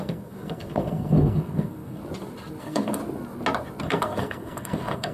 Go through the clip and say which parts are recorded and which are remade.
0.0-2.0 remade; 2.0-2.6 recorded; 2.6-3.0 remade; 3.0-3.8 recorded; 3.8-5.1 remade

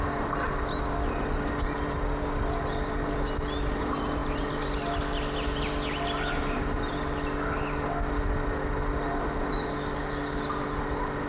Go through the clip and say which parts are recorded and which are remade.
0.0-11.3 recorded

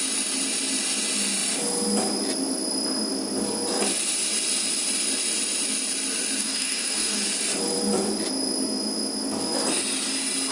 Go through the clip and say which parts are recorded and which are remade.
0.0-6.4 recorded; 6.4-7.2 remade; 7.2-10.5 recorded

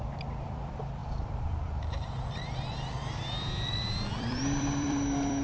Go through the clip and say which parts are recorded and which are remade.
0.0-5.4 remade

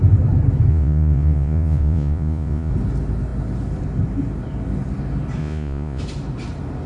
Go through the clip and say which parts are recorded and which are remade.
0.0-0.7 recorded; 0.7-2.7 remade; 2.7-5.4 recorded; 5.4-6.0 remade; 6.0-6.9 recorded

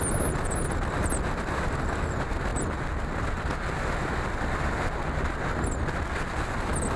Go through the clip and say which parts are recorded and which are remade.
0.0-7.0 recorded